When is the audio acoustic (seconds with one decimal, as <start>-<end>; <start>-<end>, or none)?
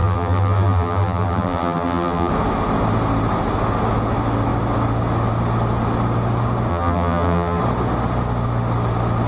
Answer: 2.3-6.7; 7.6-9.3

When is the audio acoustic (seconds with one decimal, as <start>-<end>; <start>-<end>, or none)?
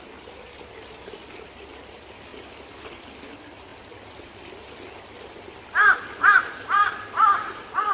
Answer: 2.3-3.0; 3.7-6.2